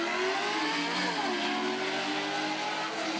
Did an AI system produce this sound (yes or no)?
no